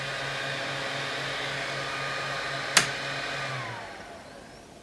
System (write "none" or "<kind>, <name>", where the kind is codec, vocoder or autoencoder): none